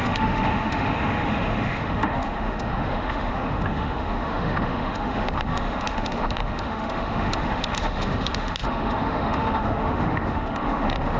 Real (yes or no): no